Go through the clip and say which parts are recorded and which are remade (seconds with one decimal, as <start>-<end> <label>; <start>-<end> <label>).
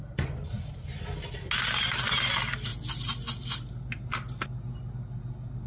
0.0-5.7 recorded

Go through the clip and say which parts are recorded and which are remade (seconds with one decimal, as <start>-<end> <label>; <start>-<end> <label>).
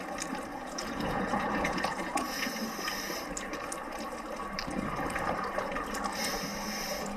0.0-0.5 recorded; 0.5-2.5 remade; 2.5-7.2 recorded